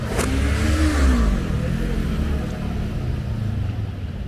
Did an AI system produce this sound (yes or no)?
no